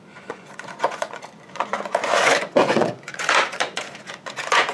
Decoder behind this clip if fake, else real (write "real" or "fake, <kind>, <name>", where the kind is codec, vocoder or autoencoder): fake, vocoder, Vocos